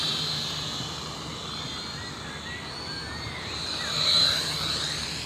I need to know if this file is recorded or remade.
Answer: recorded